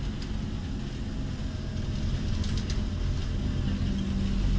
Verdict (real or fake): real